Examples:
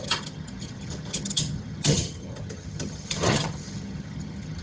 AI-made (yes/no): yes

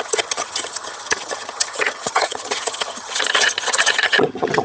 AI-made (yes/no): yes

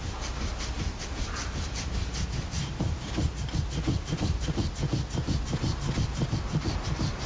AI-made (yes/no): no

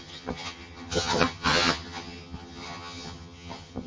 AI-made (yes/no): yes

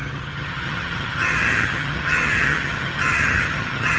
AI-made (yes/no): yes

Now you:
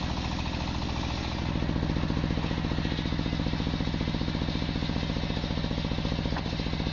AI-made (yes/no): no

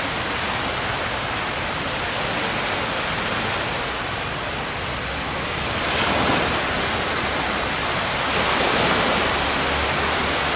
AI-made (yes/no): no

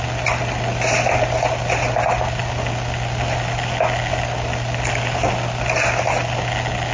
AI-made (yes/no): no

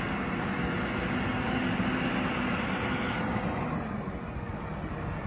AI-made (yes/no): no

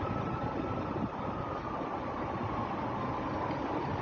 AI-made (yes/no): no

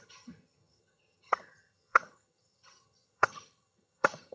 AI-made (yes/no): yes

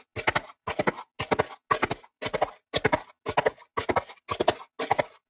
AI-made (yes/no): no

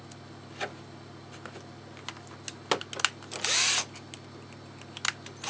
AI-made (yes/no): no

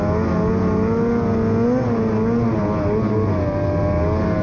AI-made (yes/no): no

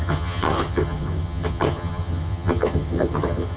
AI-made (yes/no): yes